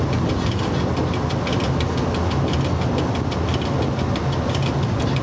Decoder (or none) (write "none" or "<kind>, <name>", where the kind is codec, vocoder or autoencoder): none